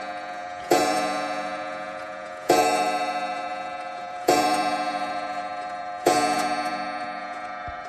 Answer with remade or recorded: remade